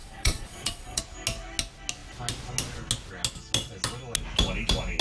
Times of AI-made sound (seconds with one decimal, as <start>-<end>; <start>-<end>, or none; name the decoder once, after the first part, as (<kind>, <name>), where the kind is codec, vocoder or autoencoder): 0.0-1.0 (vocoder, Vocos)